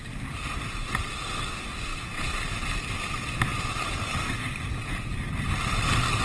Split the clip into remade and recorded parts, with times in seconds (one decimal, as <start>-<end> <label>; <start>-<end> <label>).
0.0-6.2 recorded